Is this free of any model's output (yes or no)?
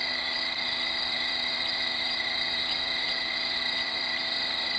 no